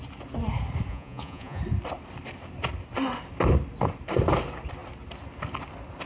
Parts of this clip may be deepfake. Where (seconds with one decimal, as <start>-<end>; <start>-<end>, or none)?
0.9-1.6